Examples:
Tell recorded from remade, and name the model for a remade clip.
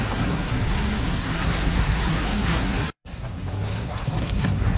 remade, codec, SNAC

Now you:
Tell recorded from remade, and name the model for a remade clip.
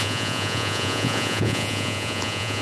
remade, vocoder, Vocos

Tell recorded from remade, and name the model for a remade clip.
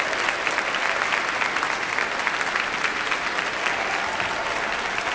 recorded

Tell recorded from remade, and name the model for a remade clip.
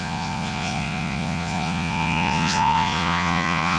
remade, vocoder, Vocos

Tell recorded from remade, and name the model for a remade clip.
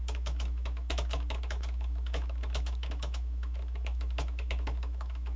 remade, autoencoder, DAC-VAE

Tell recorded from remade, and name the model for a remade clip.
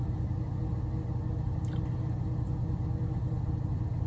recorded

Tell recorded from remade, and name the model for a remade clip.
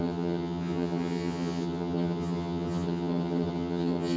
remade, vocoder, HiFi-GAN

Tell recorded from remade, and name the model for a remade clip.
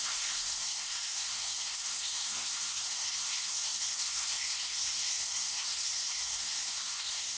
remade, codec, SNAC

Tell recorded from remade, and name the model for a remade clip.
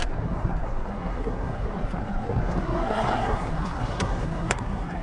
remade, codec, SNAC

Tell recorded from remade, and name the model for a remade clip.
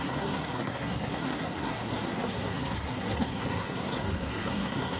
remade, codec, SNAC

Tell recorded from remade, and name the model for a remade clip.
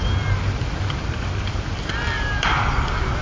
recorded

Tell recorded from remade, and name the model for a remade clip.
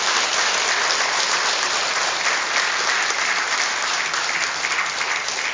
remade, vocoder, BigVGAN v2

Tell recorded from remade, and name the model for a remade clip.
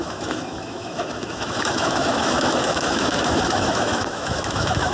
remade, autoencoder, DAC-VAE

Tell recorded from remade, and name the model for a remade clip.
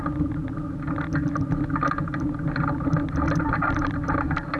recorded